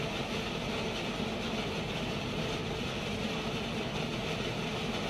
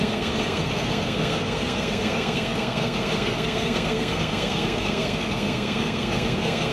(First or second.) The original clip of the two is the first